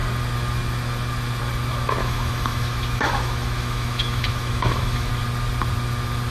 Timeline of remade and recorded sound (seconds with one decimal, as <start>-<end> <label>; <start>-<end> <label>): 0.0-2.0 recorded; 2.0-5.1 remade; 5.1-6.3 recorded